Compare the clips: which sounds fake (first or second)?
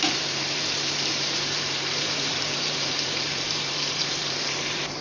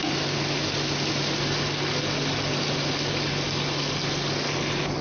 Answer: first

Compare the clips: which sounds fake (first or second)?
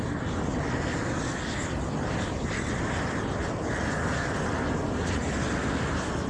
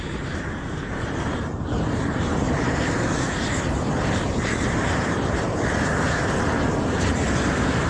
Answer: second